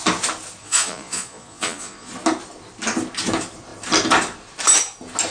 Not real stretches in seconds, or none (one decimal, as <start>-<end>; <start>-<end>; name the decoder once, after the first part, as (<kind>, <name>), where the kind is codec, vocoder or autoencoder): 0.6-2.1 (vocoder, Vocos)